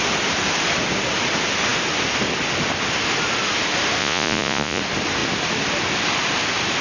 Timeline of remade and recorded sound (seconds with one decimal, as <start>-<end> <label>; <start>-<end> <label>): 0.0-4.0 recorded; 4.0-4.8 remade; 4.8-6.8 recorded